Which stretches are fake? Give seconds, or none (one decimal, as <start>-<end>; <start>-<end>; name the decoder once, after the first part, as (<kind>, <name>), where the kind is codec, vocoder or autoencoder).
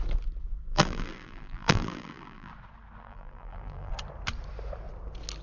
0.7-2.5 (vocoder, BigVGAN v2); 3.0-3.9